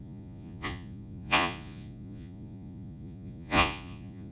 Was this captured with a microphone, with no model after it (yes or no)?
no